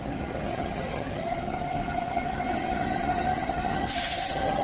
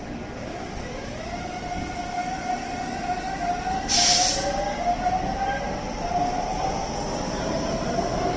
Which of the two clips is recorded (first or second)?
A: second